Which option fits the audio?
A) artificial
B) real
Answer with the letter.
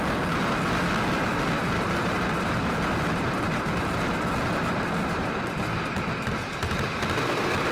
B